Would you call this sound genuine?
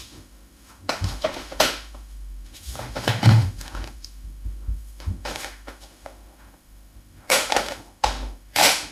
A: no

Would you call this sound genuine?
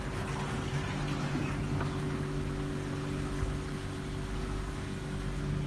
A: yes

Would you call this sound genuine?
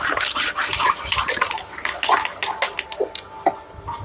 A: yes